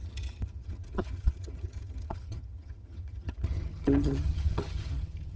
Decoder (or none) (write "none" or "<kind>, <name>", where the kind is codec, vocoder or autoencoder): vocoder, HiFi-GAN